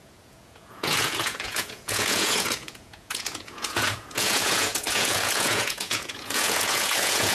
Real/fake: fake